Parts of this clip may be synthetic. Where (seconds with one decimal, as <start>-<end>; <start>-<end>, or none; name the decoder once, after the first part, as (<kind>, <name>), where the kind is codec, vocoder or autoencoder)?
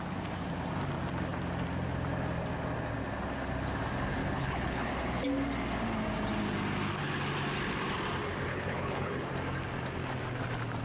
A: 4.2-4.9 (codec, HILCodec); 8.5-9.3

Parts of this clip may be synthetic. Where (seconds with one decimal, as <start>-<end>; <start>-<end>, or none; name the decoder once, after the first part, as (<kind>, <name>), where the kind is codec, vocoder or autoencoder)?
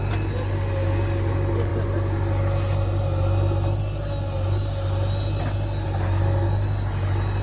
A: none